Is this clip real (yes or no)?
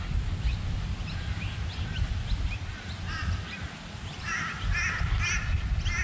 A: yes